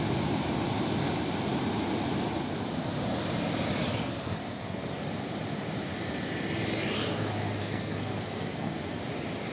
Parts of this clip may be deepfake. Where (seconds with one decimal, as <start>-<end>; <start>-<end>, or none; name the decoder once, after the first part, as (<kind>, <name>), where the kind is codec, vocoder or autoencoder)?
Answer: 4.0-5.0 (codec, SNAC); 7.6-9.0